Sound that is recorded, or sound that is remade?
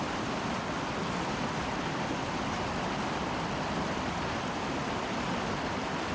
recorded